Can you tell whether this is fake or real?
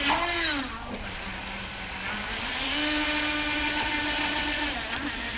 real